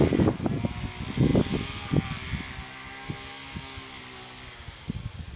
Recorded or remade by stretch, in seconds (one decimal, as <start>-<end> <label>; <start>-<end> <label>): 0.0-5.4 recorded